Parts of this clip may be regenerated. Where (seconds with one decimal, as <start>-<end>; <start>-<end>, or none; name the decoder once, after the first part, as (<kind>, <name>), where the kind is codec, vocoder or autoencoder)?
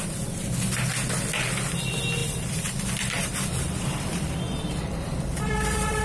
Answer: 2.2-6.0 (vocoder, BigVGAN v2)